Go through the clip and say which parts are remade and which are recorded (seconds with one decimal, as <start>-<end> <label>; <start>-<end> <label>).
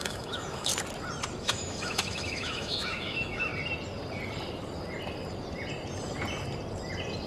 0.0-0.7 remade; 0.7-1.4 recorded; 1.4-3.5 remade; 3.5-7.3 recorded